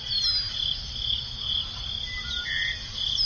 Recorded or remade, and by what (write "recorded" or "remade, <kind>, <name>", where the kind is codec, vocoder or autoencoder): recorded